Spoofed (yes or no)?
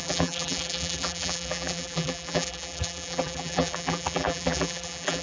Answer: yes